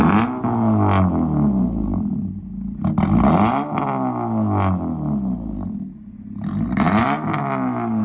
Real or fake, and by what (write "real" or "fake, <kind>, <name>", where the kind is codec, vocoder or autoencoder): real